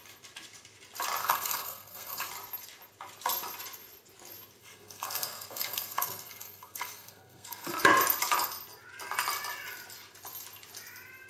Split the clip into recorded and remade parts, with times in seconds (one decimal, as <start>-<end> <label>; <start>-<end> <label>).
0.0-1.2 recorded; 1.2-2.3 remade; 2.3-4.6 recorded; 4.6-7.7 remade; 7.7-11.3 recorded